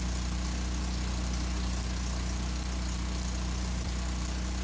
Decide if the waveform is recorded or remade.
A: recorded